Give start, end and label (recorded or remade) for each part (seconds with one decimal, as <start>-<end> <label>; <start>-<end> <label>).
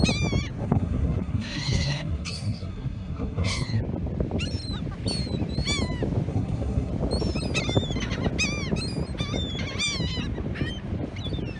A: 0.0-0.6 recorded; 0.6-3.8 remade; 3.8-6.3 recorded; 6.3-6.9 remade; 6.9-11.6 recorded